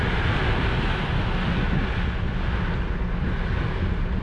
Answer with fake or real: real